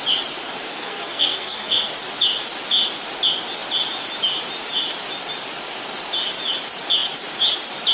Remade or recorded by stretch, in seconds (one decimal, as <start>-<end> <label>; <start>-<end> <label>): 0.0-0.7 recorded; 0.7-1.9 remade; 1.9-7.9 recorded